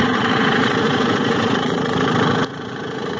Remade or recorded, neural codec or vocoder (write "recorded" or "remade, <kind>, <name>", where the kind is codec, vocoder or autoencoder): remade, vocoder, Vocos